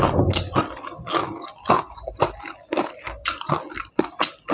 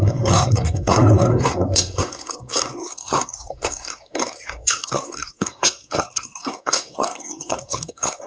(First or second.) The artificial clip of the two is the second